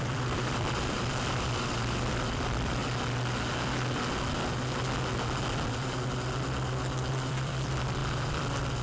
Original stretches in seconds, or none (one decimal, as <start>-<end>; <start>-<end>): 2.8-7.1